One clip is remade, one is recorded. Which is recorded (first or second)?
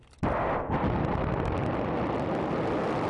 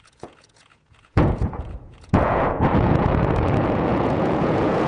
first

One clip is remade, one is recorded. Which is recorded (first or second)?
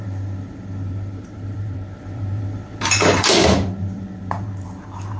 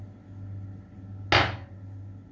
second